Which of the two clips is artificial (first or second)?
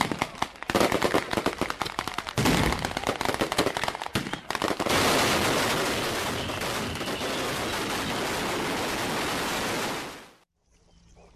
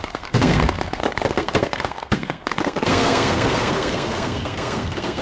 second